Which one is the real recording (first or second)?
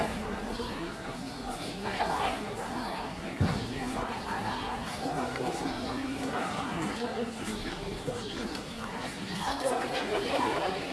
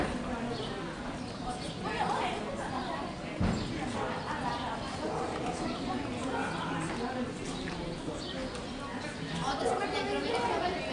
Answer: second